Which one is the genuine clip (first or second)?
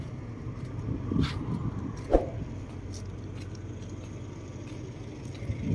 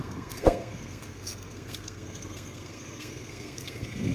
first